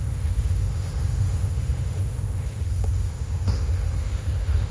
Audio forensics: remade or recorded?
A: remade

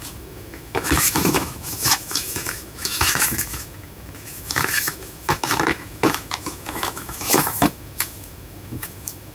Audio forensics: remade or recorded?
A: remade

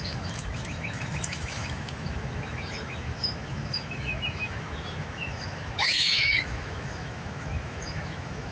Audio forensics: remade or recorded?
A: remade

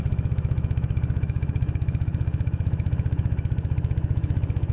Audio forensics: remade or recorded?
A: remade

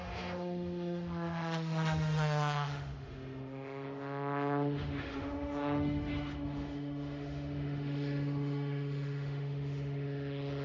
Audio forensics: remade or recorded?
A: remade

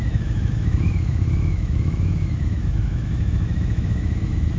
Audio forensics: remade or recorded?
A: remade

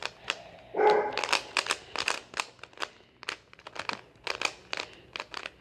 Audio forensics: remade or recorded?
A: recorded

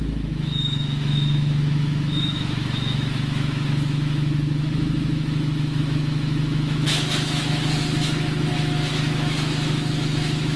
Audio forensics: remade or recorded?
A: remade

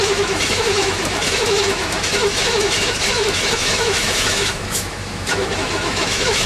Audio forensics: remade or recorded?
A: remade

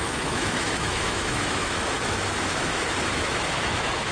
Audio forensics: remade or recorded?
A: remade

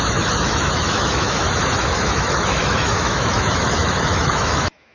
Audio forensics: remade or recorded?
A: remade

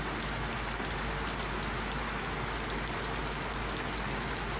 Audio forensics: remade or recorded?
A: recorded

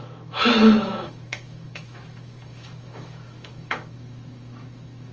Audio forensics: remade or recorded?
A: remade